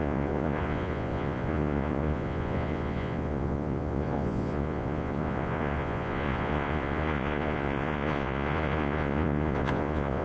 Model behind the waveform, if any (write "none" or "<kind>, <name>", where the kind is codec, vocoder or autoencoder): vocoder, Vocos